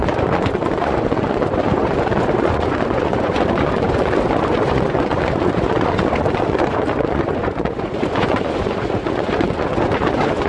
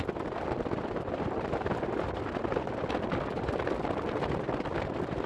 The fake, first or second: first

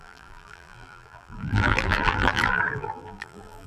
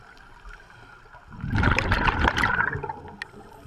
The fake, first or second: first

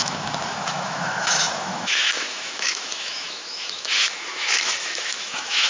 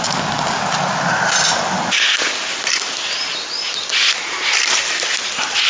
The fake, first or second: first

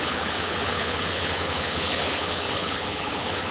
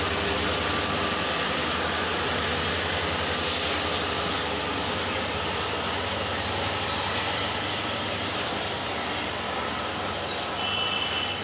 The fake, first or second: first